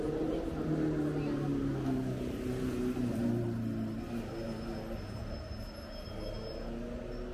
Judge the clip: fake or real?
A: real